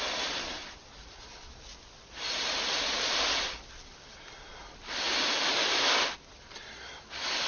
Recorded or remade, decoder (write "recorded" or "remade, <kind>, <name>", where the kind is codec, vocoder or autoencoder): recorded